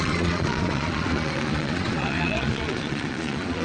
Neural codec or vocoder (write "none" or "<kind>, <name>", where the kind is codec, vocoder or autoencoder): vocoder, Vocos